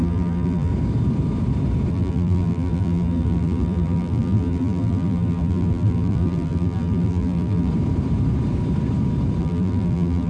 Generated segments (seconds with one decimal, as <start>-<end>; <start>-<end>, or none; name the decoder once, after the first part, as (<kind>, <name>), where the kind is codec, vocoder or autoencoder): 0.0-0.7 (vocoder, BigVGAN v2); 1.9-7.7; 9.4-10.3